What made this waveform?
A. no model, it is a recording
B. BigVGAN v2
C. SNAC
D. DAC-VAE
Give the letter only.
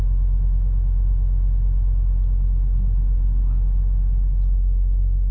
A